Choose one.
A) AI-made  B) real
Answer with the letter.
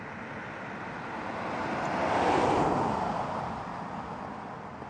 B